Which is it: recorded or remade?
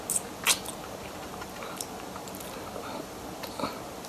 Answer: recorded